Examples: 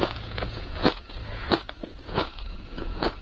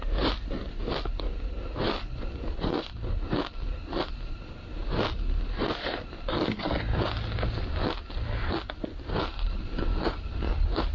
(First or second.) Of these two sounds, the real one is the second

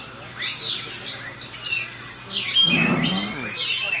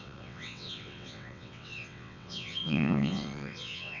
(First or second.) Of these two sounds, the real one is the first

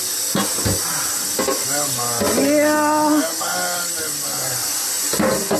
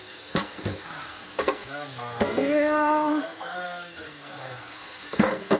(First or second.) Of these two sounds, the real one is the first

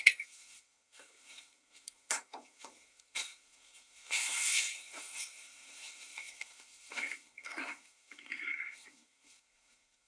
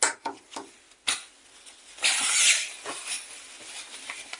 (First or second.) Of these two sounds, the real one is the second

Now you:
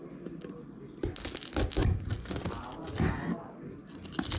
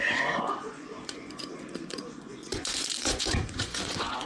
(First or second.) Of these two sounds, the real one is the first